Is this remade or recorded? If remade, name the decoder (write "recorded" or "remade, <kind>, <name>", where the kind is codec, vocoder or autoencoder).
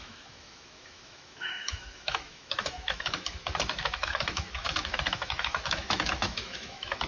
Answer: remade, autoencoder, DAC-VAE